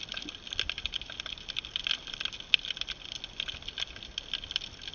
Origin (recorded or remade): recorded